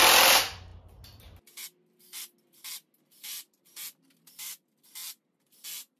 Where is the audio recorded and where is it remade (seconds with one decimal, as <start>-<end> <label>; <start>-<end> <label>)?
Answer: 0.0-6.0 recorded

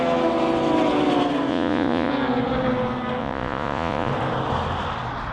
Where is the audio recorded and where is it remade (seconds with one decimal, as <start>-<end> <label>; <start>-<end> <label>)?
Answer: 0.0-1.5 recorded; 1.5-2.1 remade; 2.1-3.2 recorded; 3.2-4.1 remade; 4.1-5.3 recorded

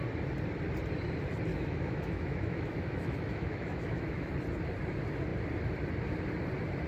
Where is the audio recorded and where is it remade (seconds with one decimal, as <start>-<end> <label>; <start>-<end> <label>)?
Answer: 0.0-1.5 recorded; 1.5-4.3 remade; 4.3-6.9 recorded